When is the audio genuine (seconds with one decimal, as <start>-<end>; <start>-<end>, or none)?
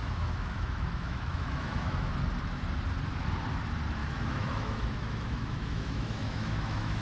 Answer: 2.1-4.0